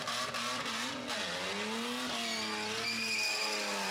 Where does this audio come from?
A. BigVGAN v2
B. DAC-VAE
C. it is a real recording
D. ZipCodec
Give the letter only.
C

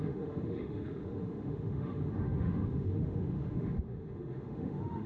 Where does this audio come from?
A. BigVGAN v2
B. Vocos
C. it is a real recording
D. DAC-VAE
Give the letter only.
D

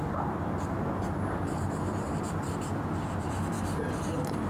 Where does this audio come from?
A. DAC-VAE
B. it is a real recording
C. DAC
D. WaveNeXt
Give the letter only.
B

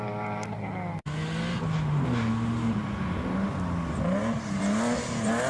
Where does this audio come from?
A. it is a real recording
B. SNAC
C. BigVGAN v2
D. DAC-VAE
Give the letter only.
A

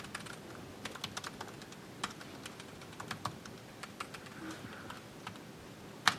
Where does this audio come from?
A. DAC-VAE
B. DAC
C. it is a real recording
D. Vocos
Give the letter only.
C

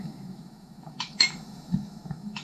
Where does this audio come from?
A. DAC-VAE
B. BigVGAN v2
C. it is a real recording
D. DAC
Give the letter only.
A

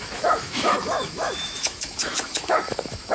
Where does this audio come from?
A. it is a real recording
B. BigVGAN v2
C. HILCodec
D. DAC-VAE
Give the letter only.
D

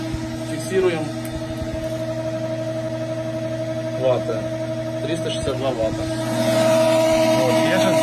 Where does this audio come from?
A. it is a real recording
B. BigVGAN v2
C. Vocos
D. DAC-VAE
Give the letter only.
A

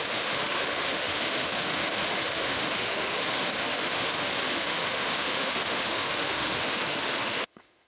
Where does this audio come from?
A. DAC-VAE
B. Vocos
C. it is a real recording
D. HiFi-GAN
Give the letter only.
A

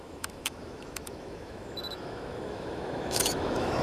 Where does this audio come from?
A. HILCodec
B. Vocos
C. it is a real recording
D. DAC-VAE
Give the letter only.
D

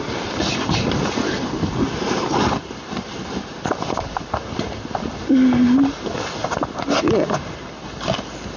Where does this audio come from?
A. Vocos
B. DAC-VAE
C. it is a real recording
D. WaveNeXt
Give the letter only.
C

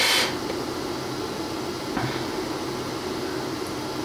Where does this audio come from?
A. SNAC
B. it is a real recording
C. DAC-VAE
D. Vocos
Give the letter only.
B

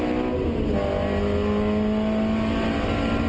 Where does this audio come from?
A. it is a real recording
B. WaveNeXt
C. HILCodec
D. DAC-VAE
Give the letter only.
A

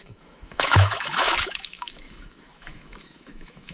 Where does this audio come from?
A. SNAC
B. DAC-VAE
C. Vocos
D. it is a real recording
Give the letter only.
B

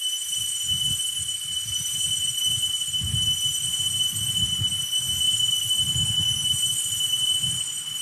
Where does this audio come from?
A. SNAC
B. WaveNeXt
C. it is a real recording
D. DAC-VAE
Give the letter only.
C